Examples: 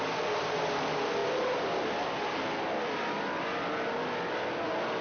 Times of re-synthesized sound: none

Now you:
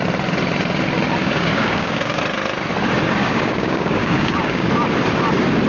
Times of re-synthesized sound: 1.2-2.2 (codec, DAC); 3.2-4.7

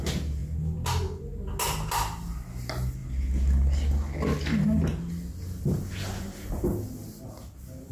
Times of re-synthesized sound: none

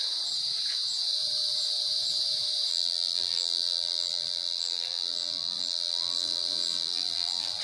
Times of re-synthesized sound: 2.7-7.6 (vocoder, BigVGAN v2)

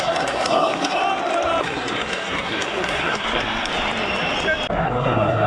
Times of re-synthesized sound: 0.0-1.0 (codec, SNAC); 1.6-3.7; 4.7-5.5

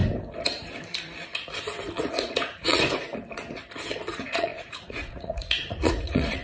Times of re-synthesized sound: 2.0-3.1 (vocoder, Vocos); 4.1-6.4

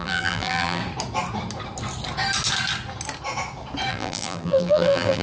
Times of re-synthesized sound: 0.0-0.8 (vocoder, BigVGAN v2); 3.9-5.2